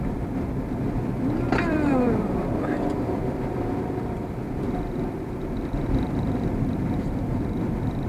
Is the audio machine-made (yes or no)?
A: yes